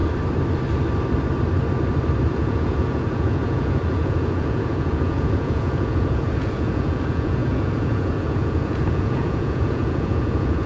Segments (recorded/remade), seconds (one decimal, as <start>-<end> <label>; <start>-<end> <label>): 0.0-2.3 recorded; 2.3-10.7 remade